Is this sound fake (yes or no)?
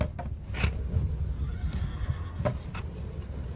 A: no